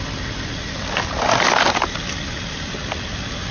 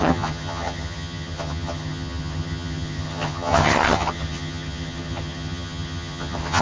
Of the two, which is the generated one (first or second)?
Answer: second